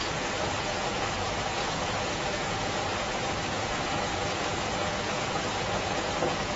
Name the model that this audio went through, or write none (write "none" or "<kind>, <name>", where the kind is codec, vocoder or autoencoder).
vocoder, Vocos